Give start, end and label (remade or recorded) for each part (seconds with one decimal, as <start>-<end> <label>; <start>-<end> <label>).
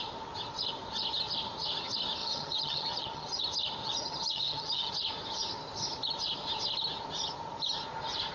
0.0-2.2 recorded; 2.2-3.4 remade; 3.4-3.8 recorded; 3.8-4.9 remade; 4.9-8.3 recorded